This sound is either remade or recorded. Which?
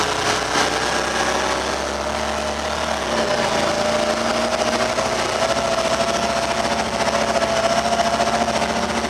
recorded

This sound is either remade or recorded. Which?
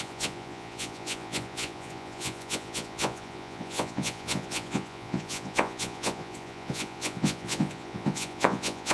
remade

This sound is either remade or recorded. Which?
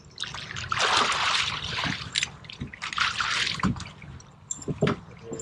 recorded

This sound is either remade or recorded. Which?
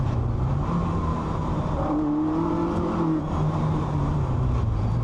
remade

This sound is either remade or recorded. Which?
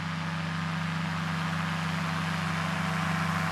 recorded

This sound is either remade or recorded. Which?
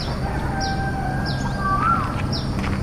recorded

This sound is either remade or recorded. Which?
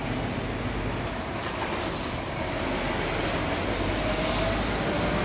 recorded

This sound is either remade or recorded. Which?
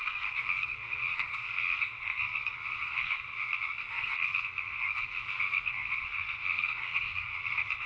remade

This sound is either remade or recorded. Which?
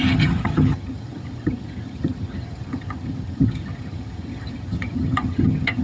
remade